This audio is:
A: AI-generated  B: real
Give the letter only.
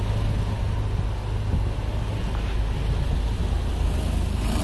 B